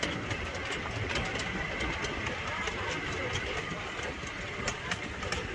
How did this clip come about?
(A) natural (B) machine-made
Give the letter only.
A